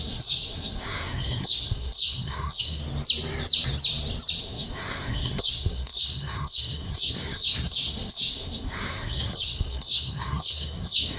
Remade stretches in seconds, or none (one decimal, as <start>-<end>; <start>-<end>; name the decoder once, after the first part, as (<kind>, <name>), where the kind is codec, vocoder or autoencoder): 0.0-2.8 (codec, SNAC); 4.4-11.2